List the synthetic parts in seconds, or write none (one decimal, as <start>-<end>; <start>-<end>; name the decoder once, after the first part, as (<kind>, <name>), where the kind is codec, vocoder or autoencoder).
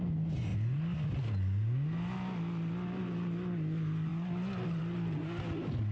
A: none